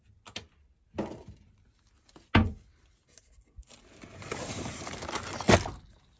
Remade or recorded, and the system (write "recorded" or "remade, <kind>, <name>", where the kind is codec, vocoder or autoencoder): recorded